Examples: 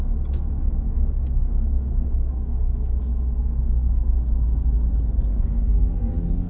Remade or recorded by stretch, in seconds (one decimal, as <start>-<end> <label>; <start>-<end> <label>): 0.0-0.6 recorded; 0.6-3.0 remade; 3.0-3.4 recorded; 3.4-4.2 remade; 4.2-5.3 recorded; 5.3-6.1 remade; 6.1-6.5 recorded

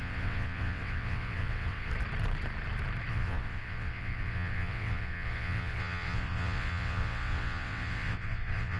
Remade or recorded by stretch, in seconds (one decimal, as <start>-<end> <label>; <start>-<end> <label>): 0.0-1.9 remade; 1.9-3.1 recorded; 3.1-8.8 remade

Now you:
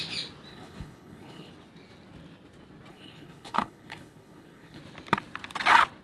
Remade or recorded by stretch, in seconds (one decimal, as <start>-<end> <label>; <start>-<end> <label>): 0.0-0.5 recorded; 0.5-1.5 remade; 1.5-2.9 recorded; 2.9-4.8 remade; 4.8-6.0 recorded

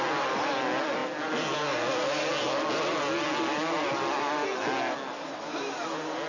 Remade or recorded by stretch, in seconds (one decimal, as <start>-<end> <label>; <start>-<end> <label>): 0.0-6.3 recorded

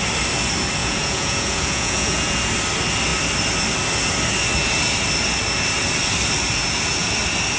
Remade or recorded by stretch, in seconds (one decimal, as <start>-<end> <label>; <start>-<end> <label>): 0.0-0.8 recorded; 0.8-2.5 remade; 2.5-7.6 recorded